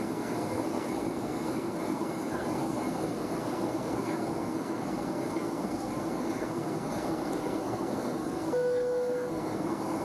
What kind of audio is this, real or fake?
fake